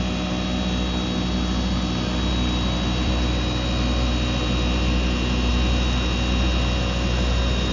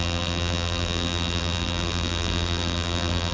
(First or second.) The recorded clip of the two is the first